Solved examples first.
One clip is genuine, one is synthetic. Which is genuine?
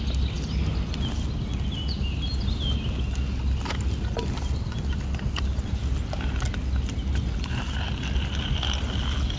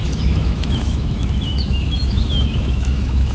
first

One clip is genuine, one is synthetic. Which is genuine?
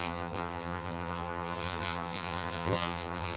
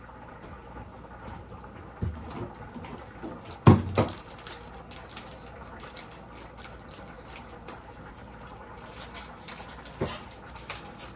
second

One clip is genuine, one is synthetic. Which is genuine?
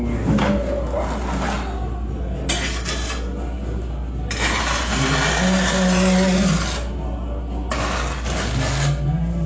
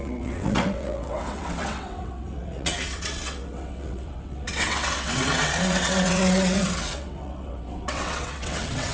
first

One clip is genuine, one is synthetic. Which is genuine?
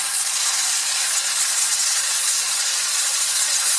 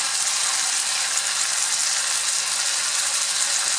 second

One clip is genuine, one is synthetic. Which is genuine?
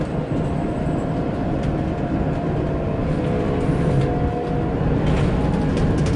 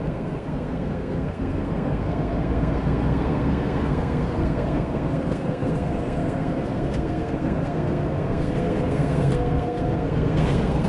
first